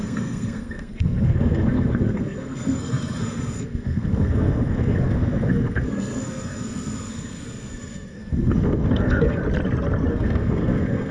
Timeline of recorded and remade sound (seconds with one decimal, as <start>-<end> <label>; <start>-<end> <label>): 0.0-9.4 remade; 9.4-10.1 recorded; 10.1-11.1 remade